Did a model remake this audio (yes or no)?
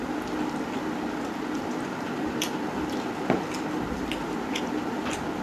no